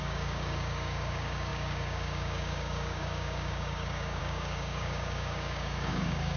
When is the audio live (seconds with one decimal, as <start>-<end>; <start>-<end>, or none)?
none